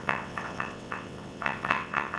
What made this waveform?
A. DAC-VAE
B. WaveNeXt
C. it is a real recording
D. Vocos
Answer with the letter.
B